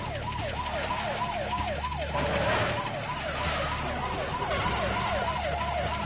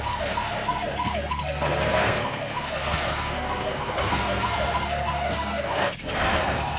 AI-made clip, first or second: second